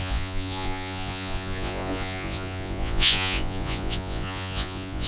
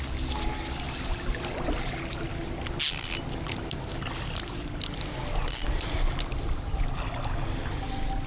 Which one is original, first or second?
second